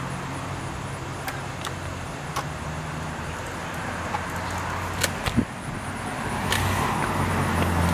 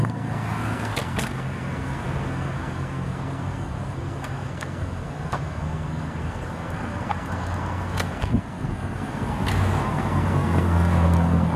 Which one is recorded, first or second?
first